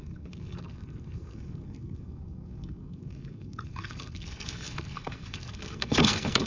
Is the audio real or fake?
fake